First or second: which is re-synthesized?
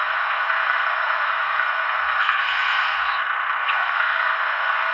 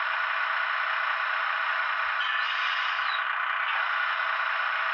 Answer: first